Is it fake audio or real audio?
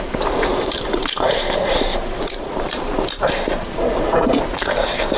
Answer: fake